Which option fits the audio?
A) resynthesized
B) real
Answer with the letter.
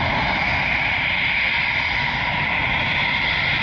B